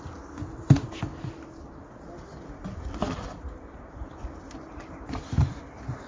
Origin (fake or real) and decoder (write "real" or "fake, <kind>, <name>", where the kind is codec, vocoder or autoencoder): real